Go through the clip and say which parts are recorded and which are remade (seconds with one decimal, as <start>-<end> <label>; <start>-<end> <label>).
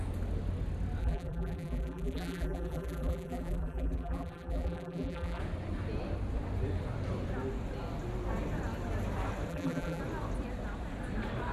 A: 0.0-1.0 recorded; 1.0-5.4 remade; 5.4-9.5 recorded; 9.5-10.0 remade; 10.0-11.5 recorded